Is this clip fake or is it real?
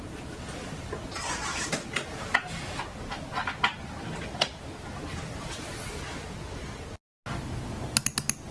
real